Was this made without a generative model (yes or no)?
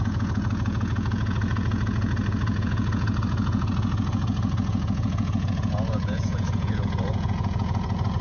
no